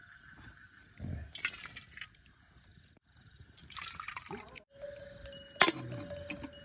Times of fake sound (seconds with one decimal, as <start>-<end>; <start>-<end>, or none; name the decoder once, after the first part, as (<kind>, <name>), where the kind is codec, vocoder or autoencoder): 2.7-4.4 (vocoder, BigVGAN v2)